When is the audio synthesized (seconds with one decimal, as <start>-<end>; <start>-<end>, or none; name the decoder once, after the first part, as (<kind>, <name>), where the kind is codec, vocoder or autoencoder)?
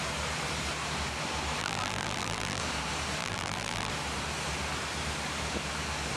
1.6-2.6 (vocoder, BigVGAN v2); 3.2-3.9